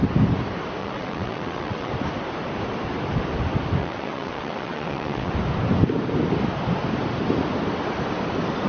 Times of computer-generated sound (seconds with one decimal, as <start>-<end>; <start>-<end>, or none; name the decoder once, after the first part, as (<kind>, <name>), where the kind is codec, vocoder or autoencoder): 0.8-1.9 (vocoder, WaveNeXt); 3.8-5.3